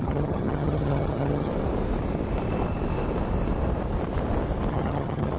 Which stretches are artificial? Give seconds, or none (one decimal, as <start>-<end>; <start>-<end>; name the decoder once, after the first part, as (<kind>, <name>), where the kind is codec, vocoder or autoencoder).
0.0-1.5 (vocoder, HiFi-GAN); 4.7-5.4